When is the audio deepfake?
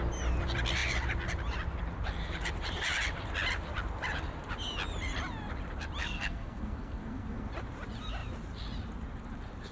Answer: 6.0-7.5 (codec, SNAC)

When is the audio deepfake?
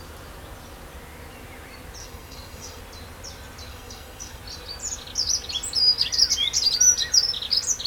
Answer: 2.0-2.8 (codec, SNAC); 3.7-4.4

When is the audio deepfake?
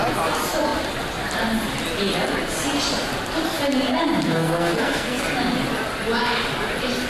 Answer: 4.3-5.2 (codec, SNAC)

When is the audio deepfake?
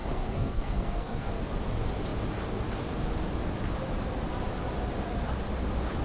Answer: 0.0-1.3 (codec, SNAC)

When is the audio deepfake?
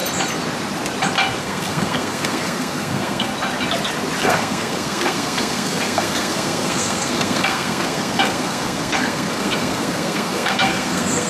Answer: 1.4-3.3 (codec, SNAC); 4.2-11.3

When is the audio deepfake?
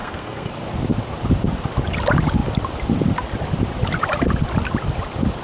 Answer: 0.0-0.5 (codec, SNAC)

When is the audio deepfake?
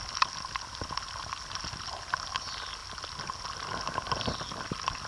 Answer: none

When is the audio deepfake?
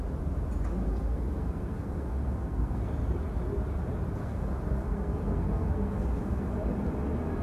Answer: 0.8-2.9 (codec, SNAC); 4.2-6.5